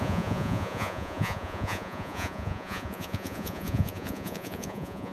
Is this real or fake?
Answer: fake